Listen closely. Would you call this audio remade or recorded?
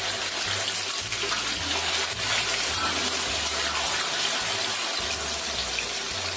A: recorded